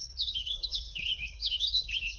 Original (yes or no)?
no